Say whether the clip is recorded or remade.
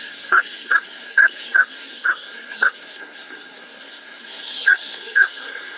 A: remade